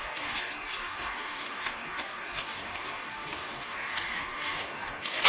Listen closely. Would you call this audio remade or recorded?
remade